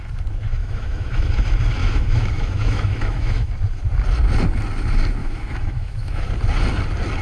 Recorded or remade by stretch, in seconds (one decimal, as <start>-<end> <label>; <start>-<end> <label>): 0.0-0.6 recorded; 0.6-1.3 remade; 1.3-1.8 recorded; 1.8-3.5 remade; 3.5-5.2 recorded; 5.2-6.3 remade; 6.3-7.2 recorded